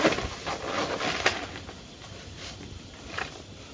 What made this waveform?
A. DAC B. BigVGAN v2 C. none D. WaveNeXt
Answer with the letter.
C